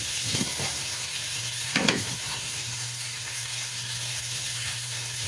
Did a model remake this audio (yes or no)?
yes